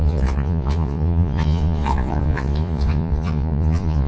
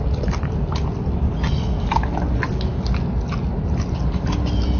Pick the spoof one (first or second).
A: first